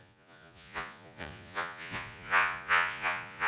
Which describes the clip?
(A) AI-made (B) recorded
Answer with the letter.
A